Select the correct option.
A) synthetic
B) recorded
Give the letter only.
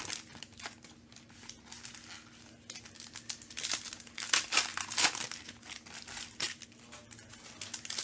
B